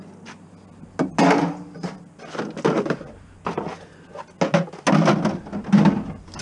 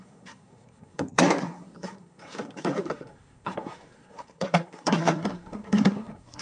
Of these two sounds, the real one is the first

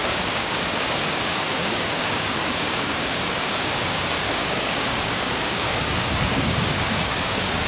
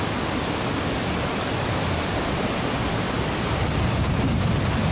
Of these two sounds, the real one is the second